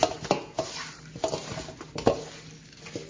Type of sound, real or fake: real